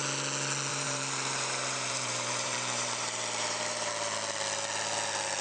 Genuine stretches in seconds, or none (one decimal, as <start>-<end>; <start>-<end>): 0.0-0.7; 3.9-5.4